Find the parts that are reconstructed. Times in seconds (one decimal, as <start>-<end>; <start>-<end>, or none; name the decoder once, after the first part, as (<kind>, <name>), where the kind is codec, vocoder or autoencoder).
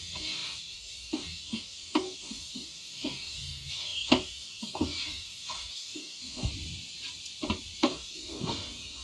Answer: 0.0-6.5 (codec, DAC); 7.8-9.0